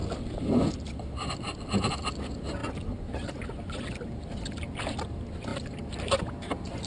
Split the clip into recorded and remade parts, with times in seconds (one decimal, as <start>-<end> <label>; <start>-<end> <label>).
0.0-1.3 remade; 1.3-2.6 recorded; 2.6-5.0 remade; 5.0-5.5 recorded; 5.5-6.3 remade; 6.3-6.9 recorded